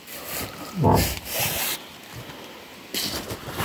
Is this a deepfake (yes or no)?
no